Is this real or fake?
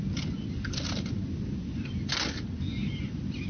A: real